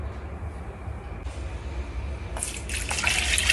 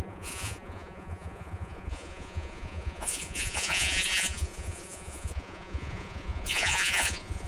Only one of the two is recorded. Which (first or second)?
first